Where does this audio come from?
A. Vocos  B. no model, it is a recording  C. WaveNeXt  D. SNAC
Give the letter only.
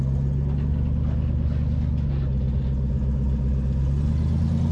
B